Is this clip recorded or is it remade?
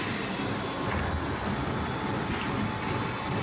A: recorded